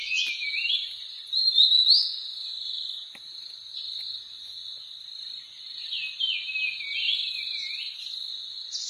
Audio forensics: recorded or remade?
recorded